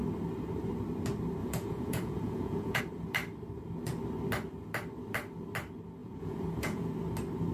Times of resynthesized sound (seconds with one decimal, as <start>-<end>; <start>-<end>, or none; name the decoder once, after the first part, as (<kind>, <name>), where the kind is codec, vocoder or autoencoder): 1.4-2.8 (vocoder, Vocos); 6.0-6.9

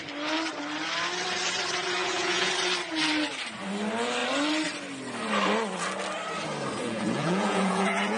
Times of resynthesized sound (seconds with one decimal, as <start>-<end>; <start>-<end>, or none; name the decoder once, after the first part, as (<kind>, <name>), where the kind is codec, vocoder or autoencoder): 2.0-2.5 (vocoder, Vocos); 6.8-8.2

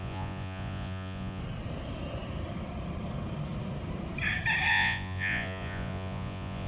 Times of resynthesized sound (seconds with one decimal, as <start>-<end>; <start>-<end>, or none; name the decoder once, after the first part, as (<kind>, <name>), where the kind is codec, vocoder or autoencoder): 0.0-1.4 (vocoder, Vocos); 4.7-6.7

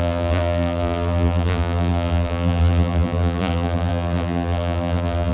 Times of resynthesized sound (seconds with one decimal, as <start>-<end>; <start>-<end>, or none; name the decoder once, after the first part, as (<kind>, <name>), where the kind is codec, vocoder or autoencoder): 0.0-5.3 (vocoder, BigVGAN v2)

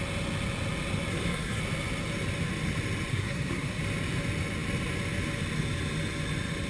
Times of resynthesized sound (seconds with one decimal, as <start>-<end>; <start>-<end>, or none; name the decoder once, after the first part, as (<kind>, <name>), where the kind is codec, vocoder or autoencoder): 1.1-1.6 (codec, SNAC); 3.1-3.8

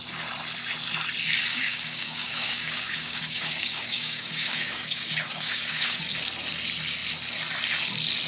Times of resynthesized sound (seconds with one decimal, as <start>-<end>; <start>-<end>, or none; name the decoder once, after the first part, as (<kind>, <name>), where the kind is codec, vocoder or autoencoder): 1.5-6.0 (codec, DAC)